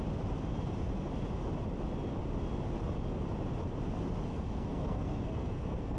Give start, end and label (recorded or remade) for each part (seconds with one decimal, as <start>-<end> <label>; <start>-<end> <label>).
0.0-4.3 recorded; 4.3-6.0 remade